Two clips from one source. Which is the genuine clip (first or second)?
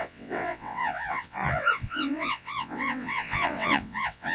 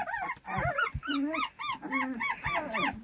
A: second